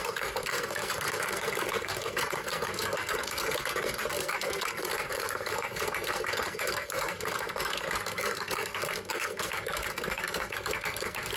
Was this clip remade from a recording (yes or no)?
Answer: yes